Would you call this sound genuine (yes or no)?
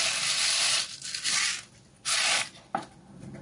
yes